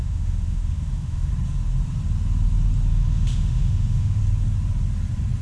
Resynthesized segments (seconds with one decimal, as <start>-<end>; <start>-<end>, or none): 0.0-1.3; 2.9-4.2